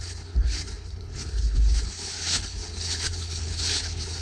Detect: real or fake fake